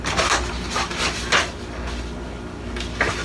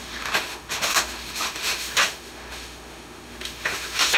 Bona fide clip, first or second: first